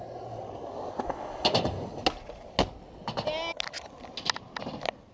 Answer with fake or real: real